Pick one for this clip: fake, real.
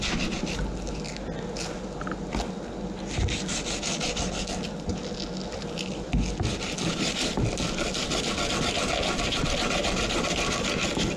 real